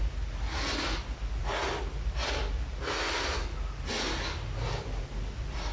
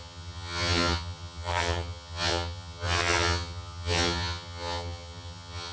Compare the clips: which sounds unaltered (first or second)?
first